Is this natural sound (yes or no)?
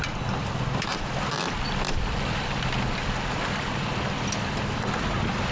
yes